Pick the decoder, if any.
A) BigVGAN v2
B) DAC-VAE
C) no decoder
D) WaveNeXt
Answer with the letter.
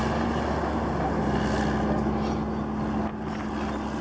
C